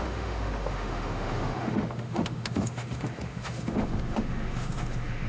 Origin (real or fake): fake